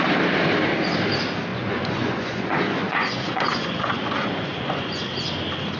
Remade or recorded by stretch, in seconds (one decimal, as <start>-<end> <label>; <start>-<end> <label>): 0.0-1.5 recorded; 1.5-5.0 remade; 5.0-5.8 recorded